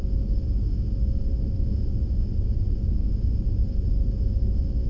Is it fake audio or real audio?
real